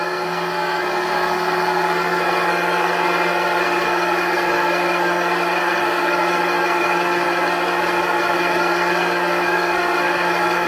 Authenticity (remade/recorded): remade